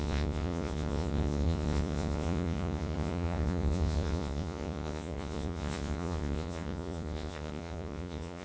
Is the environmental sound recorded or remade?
remade